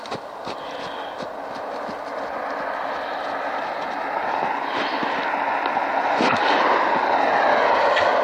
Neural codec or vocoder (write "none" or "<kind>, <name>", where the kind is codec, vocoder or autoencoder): none